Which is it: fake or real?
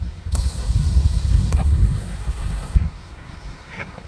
fake